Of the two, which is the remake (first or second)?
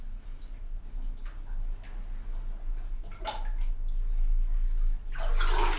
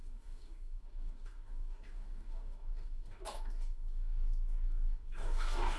second